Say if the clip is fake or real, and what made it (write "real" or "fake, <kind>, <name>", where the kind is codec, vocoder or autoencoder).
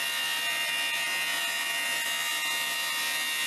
real